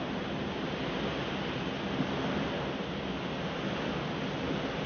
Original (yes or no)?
yes